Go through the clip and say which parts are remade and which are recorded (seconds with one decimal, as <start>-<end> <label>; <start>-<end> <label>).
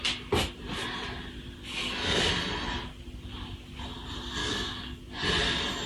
0.0-1.7 recorded; 1.7-2.3 remade; 2.3-4.4 recorded; 4.4-5.0 remade; 5.0-5.9 recorded